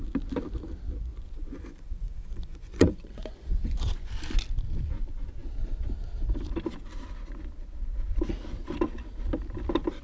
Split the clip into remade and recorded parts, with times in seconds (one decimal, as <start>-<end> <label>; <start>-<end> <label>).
0.0-1.1 recorded; 1.1-4.1 remade; 4.1-10.0 recorded

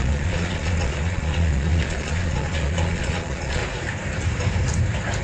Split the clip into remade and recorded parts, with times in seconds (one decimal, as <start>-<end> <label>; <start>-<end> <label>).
0.0-3.6 remade; 3.6-5.2 recorded

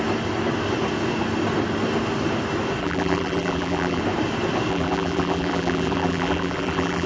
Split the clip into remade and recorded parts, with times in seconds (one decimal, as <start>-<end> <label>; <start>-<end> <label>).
0.0-2.8 recorded; 2.8-4.0 remade; 4.0-4.7 recorded; 4.7-7.1 remade